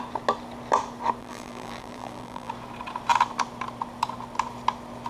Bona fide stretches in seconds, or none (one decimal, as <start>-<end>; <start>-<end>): 0.0-1.2; 2.5-5.1